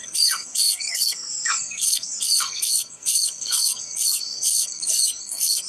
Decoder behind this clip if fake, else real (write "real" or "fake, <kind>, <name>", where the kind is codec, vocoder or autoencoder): fake, codec, SNAC